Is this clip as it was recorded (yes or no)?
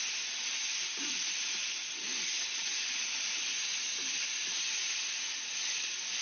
yes